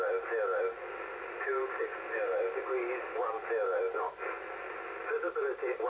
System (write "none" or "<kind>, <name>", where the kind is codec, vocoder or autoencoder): none